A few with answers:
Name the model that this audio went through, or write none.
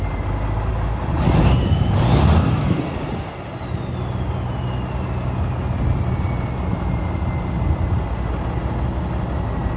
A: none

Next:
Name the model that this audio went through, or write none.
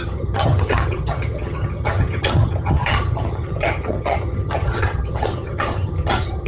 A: vocoder, HiFi-GAN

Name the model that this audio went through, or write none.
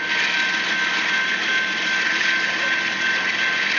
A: none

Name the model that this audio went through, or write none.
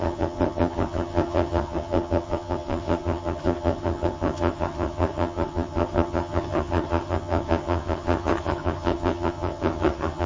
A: vocoder, HiFi-GAN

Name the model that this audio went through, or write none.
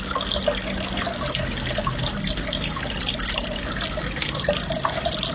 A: none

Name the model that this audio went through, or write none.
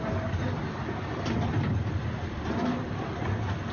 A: none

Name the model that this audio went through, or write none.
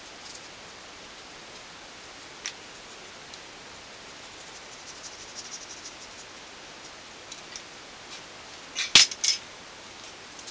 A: none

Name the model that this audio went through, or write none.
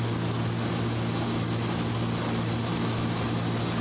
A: none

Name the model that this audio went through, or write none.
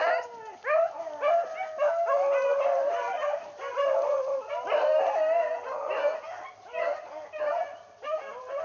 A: none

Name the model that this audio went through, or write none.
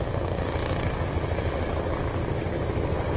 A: none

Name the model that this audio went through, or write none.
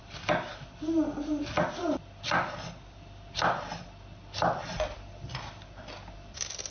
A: none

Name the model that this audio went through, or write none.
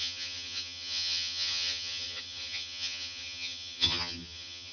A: vocoder, HiFi-GAN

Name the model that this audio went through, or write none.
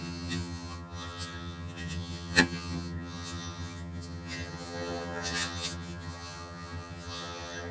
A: vocoder, HiFi-GAN